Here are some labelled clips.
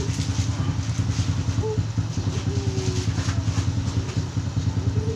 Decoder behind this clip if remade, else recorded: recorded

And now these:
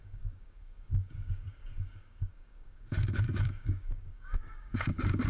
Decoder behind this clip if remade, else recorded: remade, codec, DAC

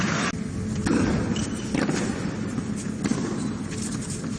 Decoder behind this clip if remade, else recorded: recorded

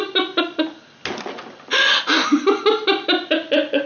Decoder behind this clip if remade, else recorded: recorded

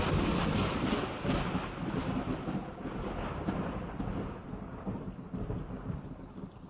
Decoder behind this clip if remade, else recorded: recorded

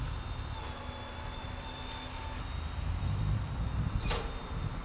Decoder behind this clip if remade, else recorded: recorded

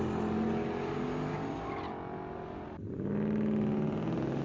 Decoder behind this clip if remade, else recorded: recorded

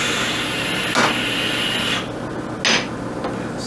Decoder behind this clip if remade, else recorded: recorded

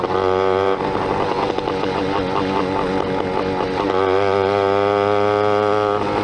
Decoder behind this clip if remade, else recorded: recorded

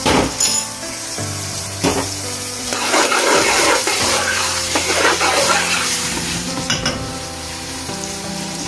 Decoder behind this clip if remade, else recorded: remade, vocoder, BigVGAN v2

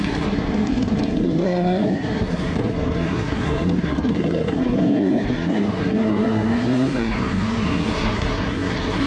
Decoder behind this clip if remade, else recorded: remade, codec, SNAC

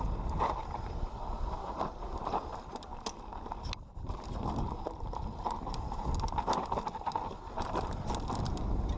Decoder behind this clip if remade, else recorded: recorded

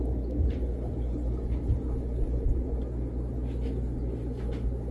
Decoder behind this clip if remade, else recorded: recorded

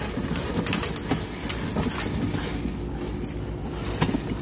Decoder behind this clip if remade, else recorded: recorded